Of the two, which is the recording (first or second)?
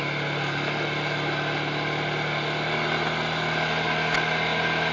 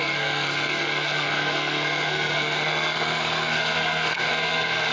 first